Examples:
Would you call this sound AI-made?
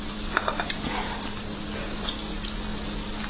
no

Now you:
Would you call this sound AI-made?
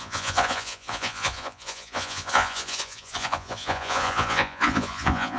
yes